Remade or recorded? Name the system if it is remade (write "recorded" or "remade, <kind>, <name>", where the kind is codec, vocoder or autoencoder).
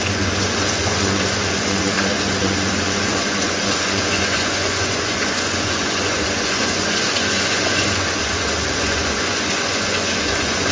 remade, vocoder, Vocos